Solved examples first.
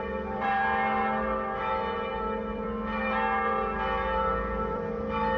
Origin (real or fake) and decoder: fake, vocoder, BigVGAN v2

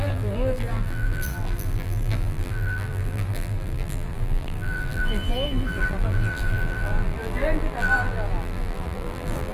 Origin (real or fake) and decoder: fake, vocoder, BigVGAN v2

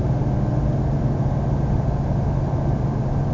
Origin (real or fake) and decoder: real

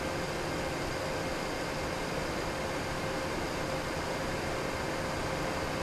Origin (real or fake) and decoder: real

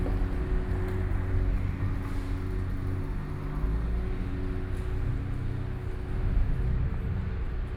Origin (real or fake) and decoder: real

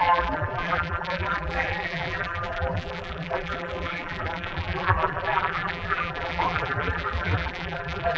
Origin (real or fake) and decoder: fake, vocoder, BigVGAN v2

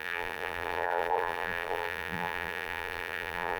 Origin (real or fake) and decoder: fake, vocoder, BigVGAN v2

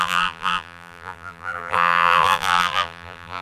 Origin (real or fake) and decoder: fake, vocoder, BigVGAN v2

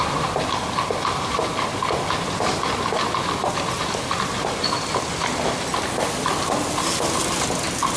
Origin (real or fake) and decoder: real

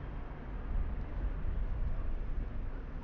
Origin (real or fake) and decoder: real